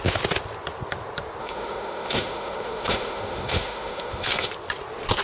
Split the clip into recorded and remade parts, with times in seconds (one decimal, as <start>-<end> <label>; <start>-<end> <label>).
0.0-1.4 recorded; 1.4-4.5 remade; 4.5-5.2 recorded